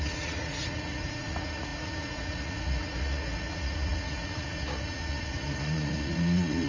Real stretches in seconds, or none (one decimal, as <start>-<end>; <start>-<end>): none